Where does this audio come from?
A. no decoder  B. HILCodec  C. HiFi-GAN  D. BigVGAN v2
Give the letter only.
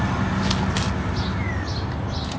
A